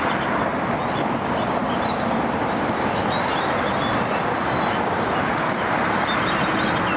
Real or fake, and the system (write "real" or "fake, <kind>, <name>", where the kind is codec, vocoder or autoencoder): real